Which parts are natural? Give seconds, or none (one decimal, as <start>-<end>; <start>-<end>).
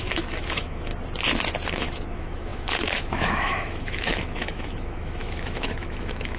0.9-1.7